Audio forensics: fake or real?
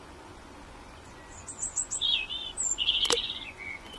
fake